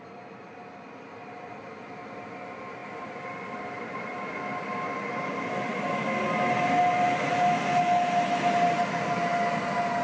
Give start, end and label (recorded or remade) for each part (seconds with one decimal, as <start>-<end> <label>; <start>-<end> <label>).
0.0-10.0 recorded